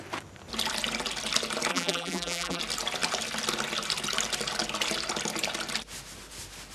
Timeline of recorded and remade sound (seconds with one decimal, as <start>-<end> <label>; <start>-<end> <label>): 0.0-1.7 recorded; 1.7-2.6 remade; 2.6-6.7 recorded